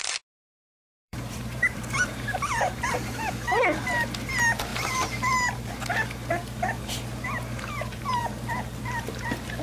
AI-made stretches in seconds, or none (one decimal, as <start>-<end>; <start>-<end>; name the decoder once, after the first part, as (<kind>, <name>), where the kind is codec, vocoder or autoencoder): 0.6-3.3 (vocoder, BigVGAN v2); 4.7-5.7